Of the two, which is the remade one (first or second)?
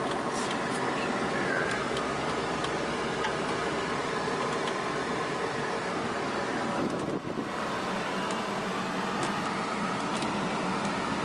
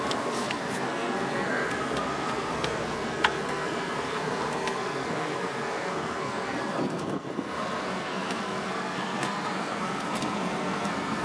second